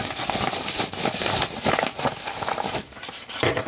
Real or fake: real